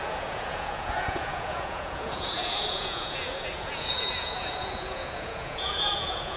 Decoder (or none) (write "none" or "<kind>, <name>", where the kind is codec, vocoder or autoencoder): vocoder, Vocos